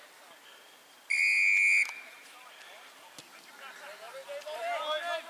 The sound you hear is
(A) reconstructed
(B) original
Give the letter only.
B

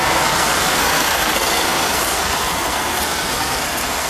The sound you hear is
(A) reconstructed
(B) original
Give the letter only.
A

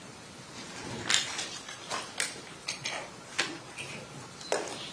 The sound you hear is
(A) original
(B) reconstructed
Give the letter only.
A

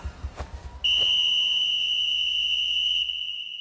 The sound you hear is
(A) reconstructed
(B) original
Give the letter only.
B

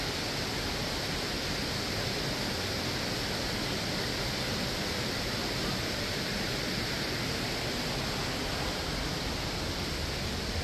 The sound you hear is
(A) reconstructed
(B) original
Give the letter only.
B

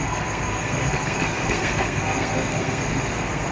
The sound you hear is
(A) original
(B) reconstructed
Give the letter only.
B